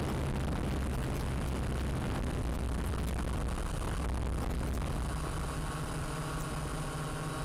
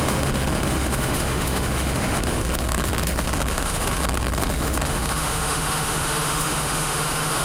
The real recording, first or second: first